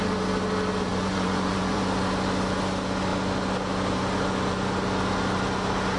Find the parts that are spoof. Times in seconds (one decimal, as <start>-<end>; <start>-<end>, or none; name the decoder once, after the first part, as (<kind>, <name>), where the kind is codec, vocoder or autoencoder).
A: 0.9-1.8 (vocoder, Vocos)